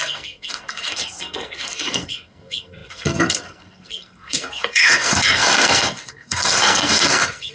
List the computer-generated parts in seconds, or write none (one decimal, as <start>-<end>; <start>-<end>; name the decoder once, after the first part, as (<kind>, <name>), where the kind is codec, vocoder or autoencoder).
0.0-7.5 (codec, SNAC)